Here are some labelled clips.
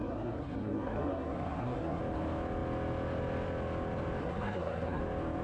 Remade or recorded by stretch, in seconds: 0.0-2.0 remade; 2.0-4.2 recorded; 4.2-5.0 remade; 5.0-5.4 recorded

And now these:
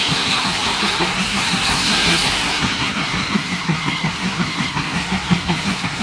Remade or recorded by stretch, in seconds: 0.0-6.0 remade

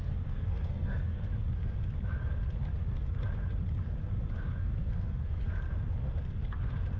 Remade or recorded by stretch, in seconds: 0.0-1.3 remade; 1.3-4.6 recorded; 4.6-5.5 remade; 5.5-7.0 recorded

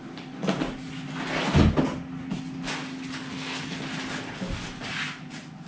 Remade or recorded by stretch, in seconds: 0.0-3.2 recorded; 3.2-3.8 remade; 3.8-5.7 recorded

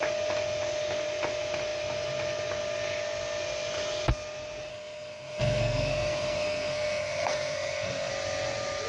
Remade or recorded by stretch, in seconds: 0.0-4.7 recorded; 4.7-8.1 remade; 8.1-8.9 recorded